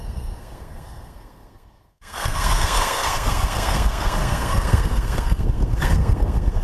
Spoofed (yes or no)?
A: yes